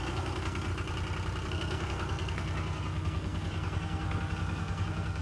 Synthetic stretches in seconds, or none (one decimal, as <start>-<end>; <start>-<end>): 0.0-0.7; 1.5-5.2